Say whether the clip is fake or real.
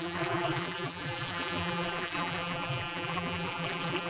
fake